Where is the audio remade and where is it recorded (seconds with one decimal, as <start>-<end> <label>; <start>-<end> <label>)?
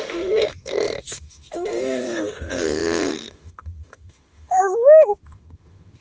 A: 0.0-6.0 remade